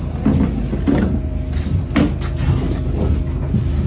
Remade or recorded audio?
recorded